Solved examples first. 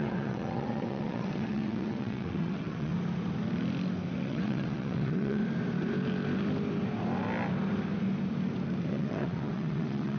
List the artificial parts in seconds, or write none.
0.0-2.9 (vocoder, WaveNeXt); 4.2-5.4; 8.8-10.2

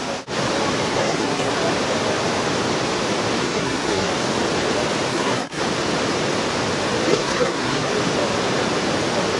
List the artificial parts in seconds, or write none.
0.9-1.5 (codec, SNAC); 3.4-4.1; 5.1-5.6; 7.1-7.9

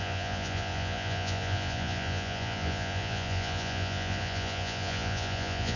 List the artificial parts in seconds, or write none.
0.0-5.8 (vocoder, Vocos)

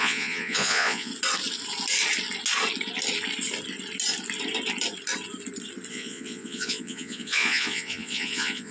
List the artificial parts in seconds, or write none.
0.0-1.1 (vocoder, Vocos); 5.9-8.7

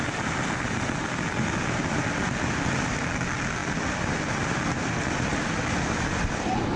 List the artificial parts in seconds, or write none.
none

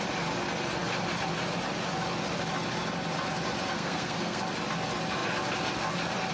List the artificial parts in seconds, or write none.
3.7-4.4 (codec, SNAC)

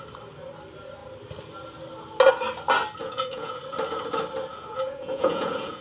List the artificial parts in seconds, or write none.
3.0-3.6 (vocoder, Vocos); 4.5-5.8